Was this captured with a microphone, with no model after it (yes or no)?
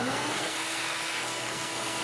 no